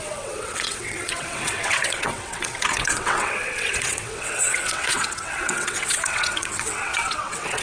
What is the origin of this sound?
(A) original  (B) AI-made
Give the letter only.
B